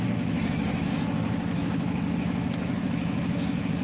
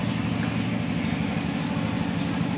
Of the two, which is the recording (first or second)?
second